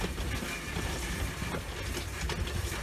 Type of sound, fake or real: real